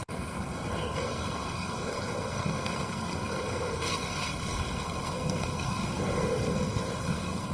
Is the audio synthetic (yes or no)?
yes